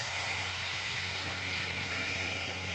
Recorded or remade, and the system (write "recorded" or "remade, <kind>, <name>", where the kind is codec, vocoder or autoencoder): remade, codec, SNAC